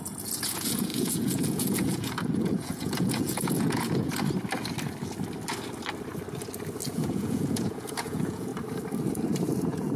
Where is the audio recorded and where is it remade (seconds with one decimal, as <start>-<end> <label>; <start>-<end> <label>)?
0.0-4.1 remade; 4.1-6.9 recorded; 6.9-8.5 remade; 8.5-9.6 recorded; 9.6-10.0 remade